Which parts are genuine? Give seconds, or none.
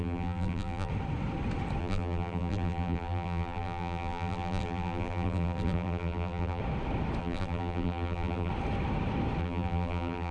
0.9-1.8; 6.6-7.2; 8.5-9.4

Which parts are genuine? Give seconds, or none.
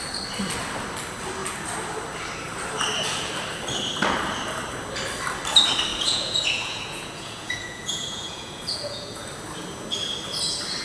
0.0-5.9; 9.2-10.8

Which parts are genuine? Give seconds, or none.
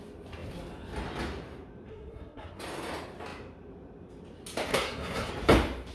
0.0-1.9; 2.6-4.7; 5.3-5.9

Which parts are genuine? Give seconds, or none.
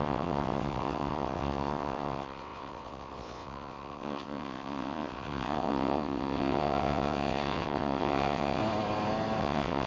8.6-9.4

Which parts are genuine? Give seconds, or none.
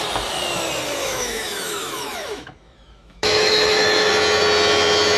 0.0-1.0; 4.1-5.2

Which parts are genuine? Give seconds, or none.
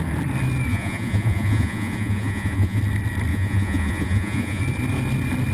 0.0-0.7; 2.8-3.3; 4.6-5.5